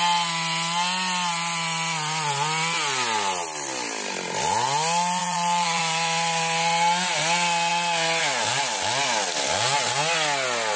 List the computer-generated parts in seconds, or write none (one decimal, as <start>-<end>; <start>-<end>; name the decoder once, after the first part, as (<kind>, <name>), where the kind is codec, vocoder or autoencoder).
5.2-5.8 (vocoder, Vocos)